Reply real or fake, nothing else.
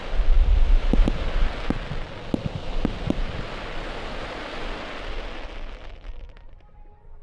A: real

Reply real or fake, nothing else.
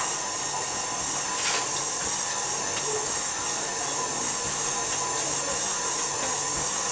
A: real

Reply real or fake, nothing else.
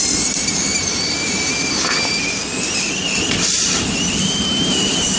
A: fake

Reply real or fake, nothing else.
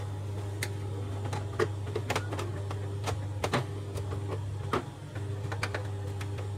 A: real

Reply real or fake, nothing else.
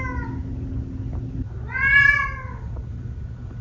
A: real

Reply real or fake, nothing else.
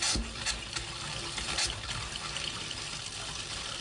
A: real